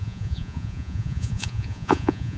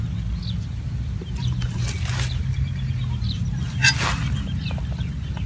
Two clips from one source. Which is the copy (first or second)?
first